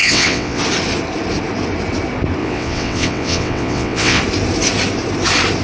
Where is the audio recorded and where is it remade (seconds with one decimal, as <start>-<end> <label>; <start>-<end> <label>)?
0.0-0.6 remade; 0.6-2.4 recorded; 2.4-4.2 remade; 4.2-5.6 recorded